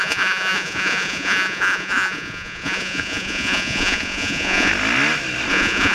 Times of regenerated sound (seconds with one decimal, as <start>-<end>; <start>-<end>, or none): 0.0-4.7; 5.5-5.9